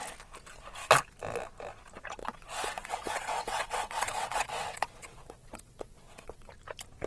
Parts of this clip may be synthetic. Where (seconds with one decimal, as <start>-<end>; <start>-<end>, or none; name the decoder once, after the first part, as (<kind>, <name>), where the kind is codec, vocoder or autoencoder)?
2.2-6.5 (vocoder, WaveNeXt)

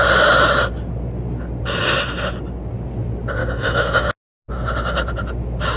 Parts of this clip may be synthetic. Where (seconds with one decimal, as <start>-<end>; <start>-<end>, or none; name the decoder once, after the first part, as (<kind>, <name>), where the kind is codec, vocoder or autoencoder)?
3.4-4.1 (autoencoder, DAC-VAE)

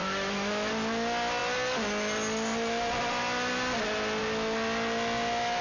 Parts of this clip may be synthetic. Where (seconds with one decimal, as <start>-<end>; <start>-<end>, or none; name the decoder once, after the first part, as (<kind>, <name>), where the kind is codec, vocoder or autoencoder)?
0.0-0.7 (autoencoder, DAC-VAE)

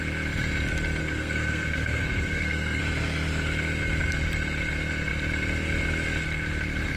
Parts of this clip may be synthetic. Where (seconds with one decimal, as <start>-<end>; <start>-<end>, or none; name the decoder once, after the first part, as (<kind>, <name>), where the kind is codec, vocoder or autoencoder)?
1.0-2.8 (codec, SNAC)